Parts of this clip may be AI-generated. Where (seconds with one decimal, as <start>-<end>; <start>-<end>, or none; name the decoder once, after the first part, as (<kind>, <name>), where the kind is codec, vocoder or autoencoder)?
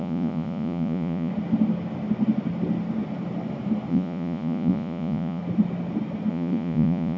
0.0-1.3 (vocoder, Vocos); 3.9-5.4; 6.3-7.2